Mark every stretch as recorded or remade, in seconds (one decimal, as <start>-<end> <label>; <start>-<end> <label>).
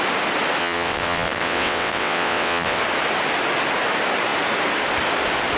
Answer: 0.0-0.6 recorded; 0.6-2.8 remade; 2.8-5.6 recorded